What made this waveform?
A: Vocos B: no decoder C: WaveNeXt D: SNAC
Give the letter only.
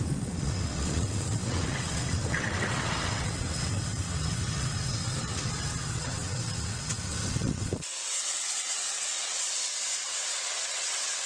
C